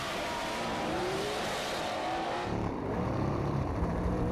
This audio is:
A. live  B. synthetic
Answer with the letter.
B